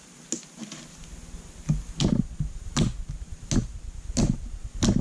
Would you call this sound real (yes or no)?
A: yes